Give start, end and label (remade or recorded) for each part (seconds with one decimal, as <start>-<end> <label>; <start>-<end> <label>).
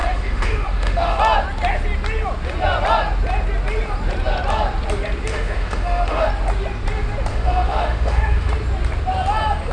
0.0-1.2 remade; 1.2-5.3 recorded; 5.3-6.3 remade; 6.3-7.3 recorded; 7.3-8.5 remade; 8.5-9.7 recorded